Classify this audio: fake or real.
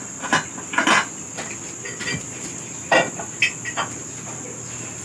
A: real